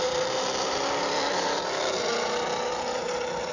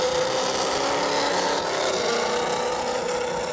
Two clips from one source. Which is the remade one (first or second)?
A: first